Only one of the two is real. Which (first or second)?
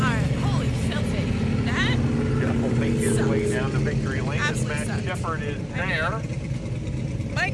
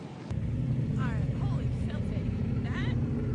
first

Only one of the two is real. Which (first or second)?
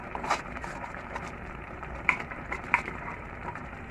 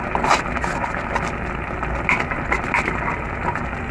second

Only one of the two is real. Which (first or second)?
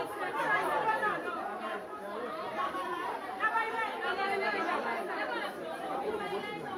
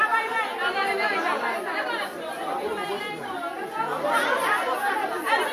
second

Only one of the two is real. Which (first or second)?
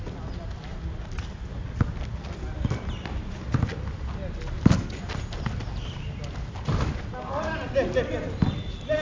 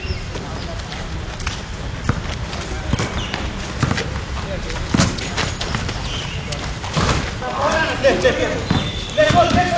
first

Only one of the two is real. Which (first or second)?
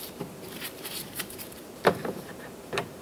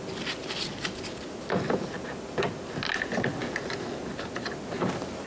second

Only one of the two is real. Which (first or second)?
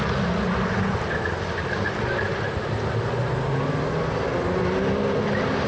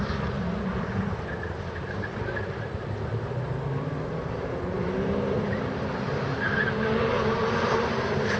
first